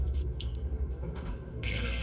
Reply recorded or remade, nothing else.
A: remade